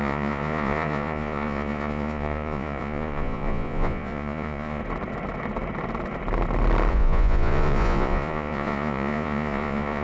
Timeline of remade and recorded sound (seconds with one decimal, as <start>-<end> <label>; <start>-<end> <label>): 0.0-4.8 remade; 4.8-6.9 recorded; 6.9-10.0 remade